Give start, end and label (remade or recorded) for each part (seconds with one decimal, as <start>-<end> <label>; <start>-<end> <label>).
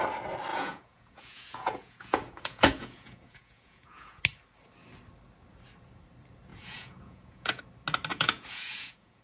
0.0-0.5 recorded; 0.5-4.2 remade; 4.2-6.5 recorded; 6.5-7.6 remade; 7.6-8.1 recorded; 8.1-9.2 remade